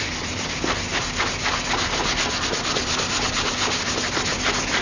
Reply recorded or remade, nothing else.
recorded